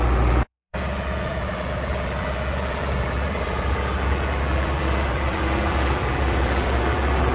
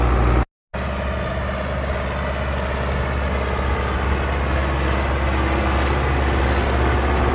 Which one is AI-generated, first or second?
first